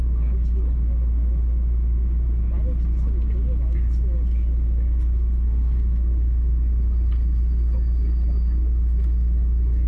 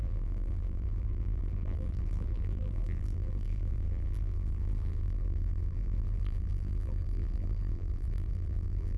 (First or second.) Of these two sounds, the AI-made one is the second